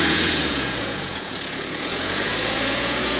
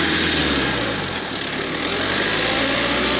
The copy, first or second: first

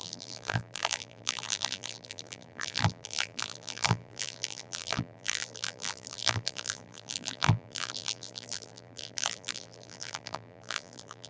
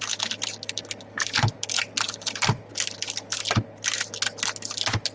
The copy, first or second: first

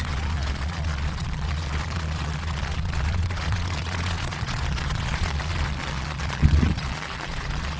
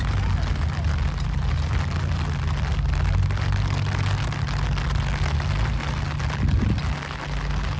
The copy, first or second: first